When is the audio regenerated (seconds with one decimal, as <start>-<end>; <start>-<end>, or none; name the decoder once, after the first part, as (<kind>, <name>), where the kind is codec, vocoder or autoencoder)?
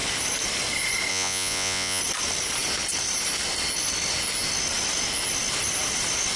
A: 1.1-2.0 (vocoder, Vocos)